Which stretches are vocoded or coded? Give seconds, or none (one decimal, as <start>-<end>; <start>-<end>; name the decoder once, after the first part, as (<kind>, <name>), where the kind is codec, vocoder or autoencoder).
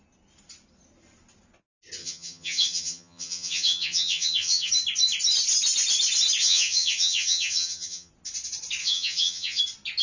2.0-4.7 (vocoder, HiFi-GAN); 6.4-8.1; 8.8-9.6